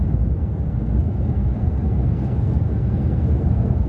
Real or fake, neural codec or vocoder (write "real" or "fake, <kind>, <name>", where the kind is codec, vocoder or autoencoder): fake, codec, SNAC